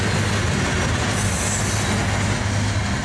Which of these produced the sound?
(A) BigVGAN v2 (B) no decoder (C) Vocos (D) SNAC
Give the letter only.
B